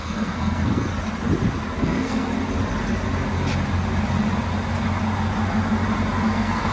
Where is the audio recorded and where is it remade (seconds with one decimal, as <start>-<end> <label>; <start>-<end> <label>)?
0.0-0.9 remade; 0.9-1.8 recorded; 1.8-2.3 remade; 2.3-6.3 recorded; 6.3-6.7 remade